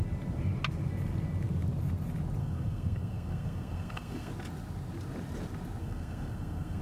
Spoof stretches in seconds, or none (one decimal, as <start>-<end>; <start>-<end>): 2.4-4.3; 5.8-6.8